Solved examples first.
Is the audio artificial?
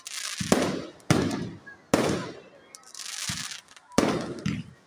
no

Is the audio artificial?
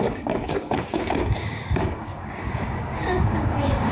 yes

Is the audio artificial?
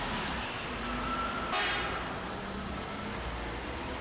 no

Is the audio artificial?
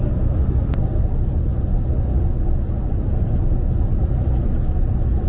no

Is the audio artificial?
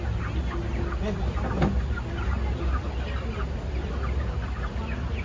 no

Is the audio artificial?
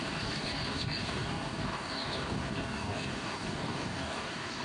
yes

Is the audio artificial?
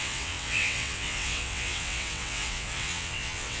yes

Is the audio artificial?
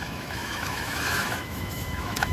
yes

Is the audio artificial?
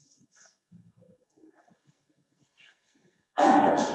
yes